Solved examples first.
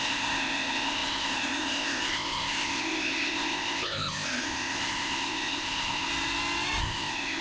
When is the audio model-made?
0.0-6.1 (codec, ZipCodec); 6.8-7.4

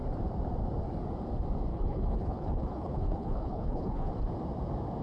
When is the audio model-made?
1.7-4.1 (codec, HILCodec)